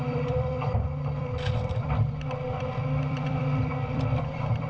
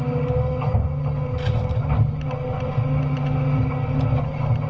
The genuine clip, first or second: second